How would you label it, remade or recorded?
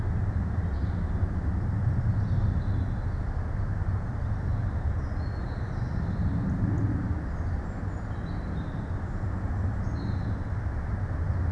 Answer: recorded